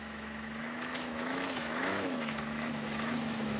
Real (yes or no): no